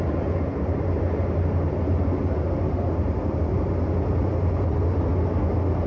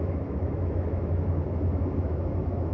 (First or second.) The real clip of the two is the first